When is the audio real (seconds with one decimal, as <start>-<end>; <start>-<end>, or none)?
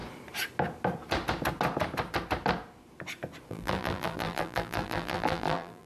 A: 0.0-3.5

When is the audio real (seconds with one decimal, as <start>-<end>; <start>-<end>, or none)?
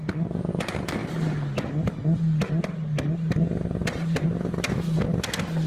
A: 0.0-3.8; 4.5-5.7